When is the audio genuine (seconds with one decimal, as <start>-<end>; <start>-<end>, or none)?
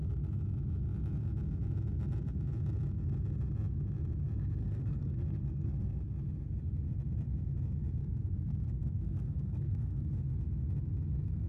0.0-4.6; 6.0-8.0; 10.0-11.5